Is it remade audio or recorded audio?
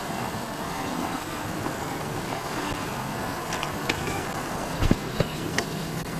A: remade